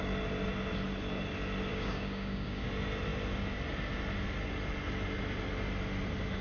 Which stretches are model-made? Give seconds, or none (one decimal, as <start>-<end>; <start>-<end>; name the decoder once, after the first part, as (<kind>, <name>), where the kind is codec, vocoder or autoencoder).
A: 1.7-2.7 (codec, DAC)

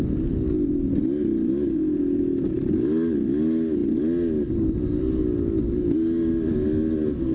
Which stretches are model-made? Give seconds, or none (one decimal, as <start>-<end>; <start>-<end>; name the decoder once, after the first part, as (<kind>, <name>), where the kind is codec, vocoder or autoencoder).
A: none

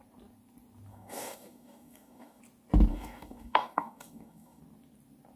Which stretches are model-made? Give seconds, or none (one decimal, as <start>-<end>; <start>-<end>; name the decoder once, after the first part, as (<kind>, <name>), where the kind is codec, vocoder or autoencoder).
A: 0.9-2.4 (codec, DAC); 2.9-4.6

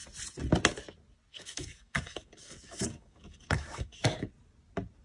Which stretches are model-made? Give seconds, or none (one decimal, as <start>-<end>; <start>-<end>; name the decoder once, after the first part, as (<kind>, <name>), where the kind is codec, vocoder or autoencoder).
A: 1.3-4.3 (codec, DAC)

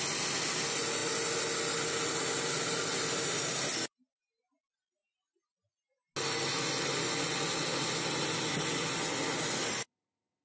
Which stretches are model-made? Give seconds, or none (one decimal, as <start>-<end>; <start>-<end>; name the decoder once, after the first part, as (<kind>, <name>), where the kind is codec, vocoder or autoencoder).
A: none

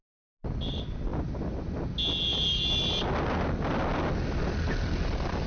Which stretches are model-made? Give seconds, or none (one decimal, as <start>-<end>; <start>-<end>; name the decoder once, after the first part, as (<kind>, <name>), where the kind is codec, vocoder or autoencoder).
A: none

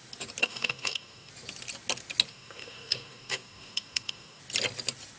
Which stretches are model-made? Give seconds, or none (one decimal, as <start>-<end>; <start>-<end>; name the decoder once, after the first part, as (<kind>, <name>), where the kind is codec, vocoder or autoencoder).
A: 0.4-1.3 (codec, DAC); 2.3-4.4

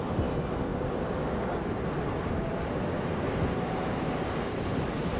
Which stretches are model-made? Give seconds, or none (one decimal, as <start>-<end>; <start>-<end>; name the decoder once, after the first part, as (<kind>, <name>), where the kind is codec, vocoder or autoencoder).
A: none